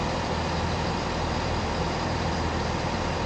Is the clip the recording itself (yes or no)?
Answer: no